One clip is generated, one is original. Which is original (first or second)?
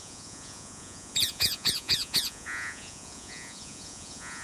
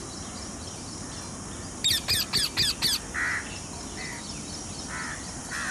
second